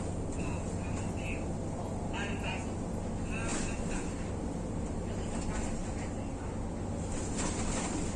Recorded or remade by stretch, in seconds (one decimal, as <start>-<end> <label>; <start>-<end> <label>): 0.0-5.8 recorded; 5.8-6.4 remade; 6.4-8.2 recorded